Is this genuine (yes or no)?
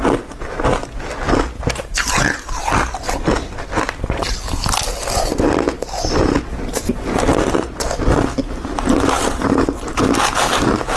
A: yes